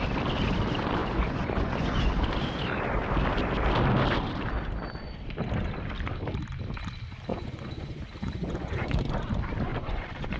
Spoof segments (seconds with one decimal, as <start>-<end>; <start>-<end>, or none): 1.0-2.0; 7.3-9.0; 9.7-10.4